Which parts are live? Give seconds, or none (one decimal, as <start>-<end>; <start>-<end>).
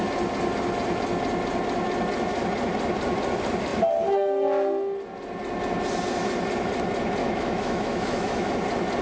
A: 0.0-7.2; 8.5-9.0